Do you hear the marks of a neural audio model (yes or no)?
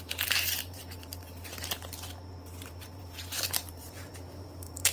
yes